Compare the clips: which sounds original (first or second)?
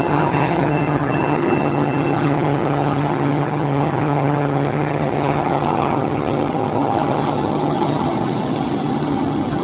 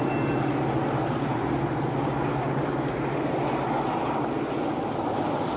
second